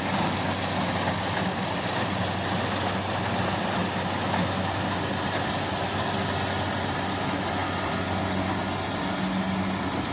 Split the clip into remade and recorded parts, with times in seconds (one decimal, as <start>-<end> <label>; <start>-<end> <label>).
0.0-10.1 recorded